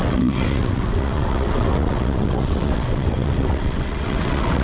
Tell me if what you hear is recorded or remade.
remade